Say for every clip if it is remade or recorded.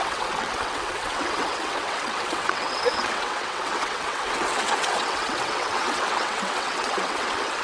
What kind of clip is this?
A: remade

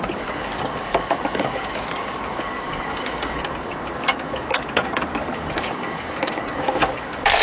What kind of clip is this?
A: remade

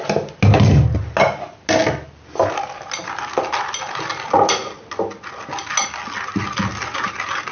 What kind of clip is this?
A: recorded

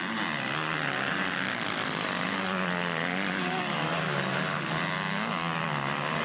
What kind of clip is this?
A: recorded